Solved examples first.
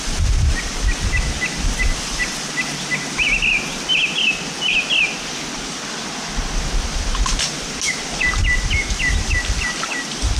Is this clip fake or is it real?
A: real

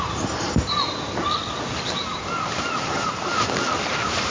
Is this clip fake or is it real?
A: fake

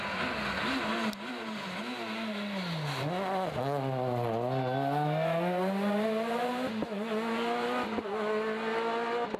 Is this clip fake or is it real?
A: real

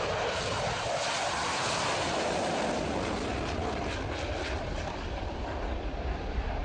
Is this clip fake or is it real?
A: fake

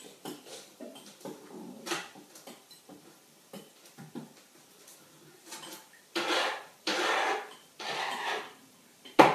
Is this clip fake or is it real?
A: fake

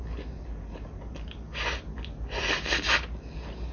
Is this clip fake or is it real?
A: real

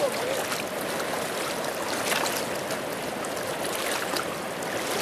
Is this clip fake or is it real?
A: real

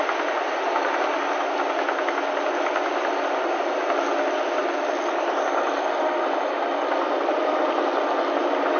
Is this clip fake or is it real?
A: real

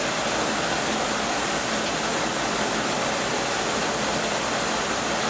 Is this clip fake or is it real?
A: real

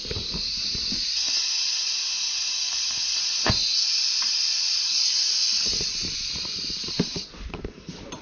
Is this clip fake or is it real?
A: fake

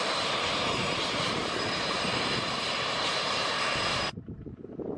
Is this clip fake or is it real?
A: fake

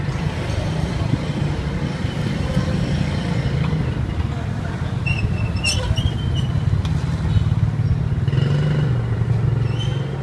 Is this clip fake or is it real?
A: real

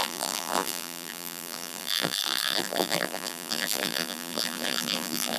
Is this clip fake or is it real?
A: fake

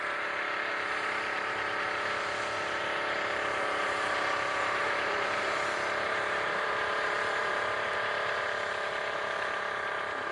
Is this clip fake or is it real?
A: fake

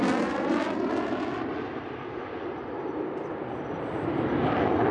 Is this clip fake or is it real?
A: real